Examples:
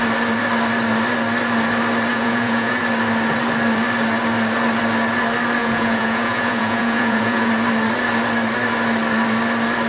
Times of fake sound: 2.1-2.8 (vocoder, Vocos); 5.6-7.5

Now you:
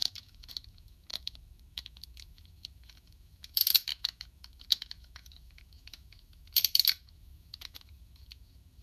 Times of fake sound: 0.0-8.8 (autoencoder, DAC-VAE)

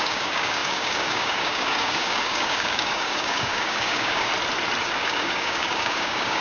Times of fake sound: 0.0-4.3 (codec, DAC); 4.8-6.4

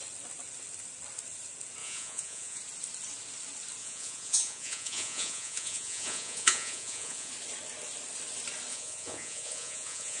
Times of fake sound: 1.8-2.6 (vocoder, Vocos); 3.8-7.3; 8.7-10.2

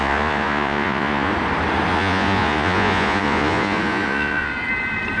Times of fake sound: 0.0-1.3 (vocoder, Vocos); 1.9-4.5

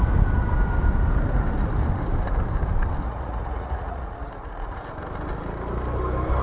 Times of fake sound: 3.0-4.8 (vocoder, Vocos)

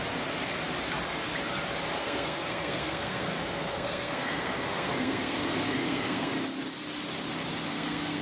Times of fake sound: 2.0-6.3 (codec, SNAC); 7.7-8.2